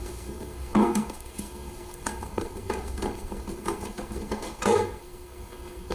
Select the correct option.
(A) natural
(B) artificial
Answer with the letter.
B